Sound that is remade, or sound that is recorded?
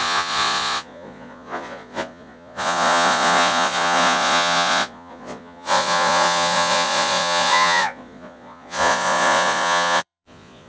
remade